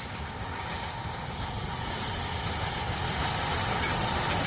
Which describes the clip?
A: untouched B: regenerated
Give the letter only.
A